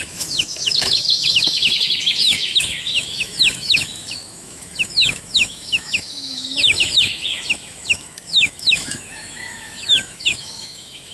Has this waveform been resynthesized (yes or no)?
yes